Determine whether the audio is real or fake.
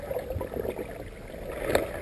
real